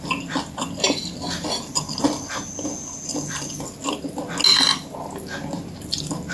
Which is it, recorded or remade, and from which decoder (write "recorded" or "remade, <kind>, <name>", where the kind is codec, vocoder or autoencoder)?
recorded